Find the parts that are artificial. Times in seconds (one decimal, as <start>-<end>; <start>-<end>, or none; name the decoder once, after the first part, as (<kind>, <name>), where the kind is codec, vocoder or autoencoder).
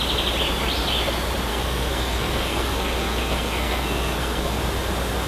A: 1.5-4.6 (codec, SNAC)